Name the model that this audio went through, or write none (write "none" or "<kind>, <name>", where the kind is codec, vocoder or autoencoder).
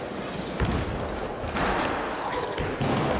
none